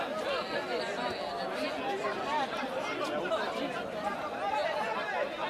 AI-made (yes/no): no